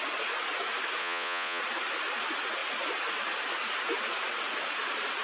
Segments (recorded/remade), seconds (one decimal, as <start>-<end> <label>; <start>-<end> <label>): 0.0-1.0 recorded; 1.0-1.6 remade; 1.6-5.2 recorded